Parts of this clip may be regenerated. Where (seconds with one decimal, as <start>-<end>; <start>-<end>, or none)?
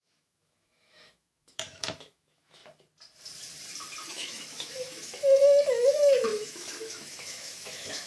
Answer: 0.0-2.6; 4.1-8.1